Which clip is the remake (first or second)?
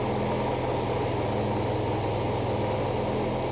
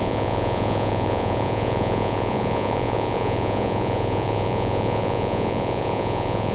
second